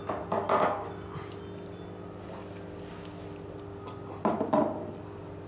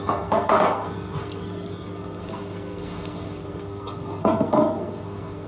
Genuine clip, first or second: first